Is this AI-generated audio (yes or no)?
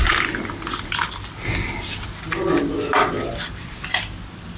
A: no